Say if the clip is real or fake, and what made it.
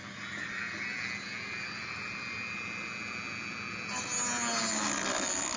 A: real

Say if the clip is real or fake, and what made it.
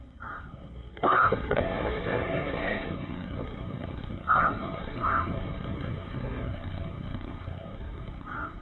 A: fake, codec, SNAC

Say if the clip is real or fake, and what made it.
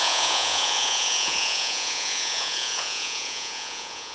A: fake, vocoder, Vocos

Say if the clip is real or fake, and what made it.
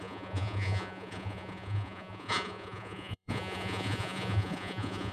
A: fake, vocoder, Vocos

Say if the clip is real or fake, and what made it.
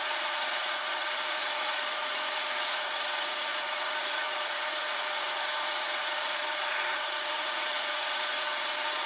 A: fake, vocoder, Vocos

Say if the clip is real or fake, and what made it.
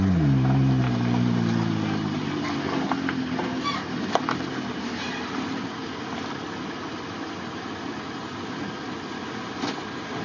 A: real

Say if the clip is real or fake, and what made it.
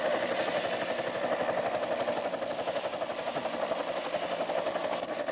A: real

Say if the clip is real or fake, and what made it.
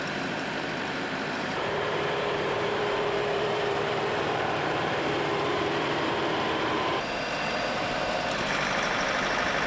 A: fake, vocoder, BigVGAN v2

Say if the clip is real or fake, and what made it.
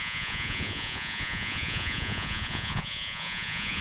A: fake, vocoder, Vocos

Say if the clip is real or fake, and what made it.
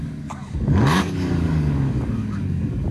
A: fake, codec, DAC